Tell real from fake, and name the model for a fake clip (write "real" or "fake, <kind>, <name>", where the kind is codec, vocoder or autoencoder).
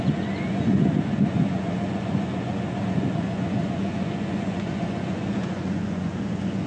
fake, vocoder, Vocos